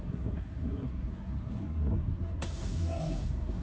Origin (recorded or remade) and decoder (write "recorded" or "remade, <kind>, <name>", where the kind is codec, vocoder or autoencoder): remade, codec, SNAC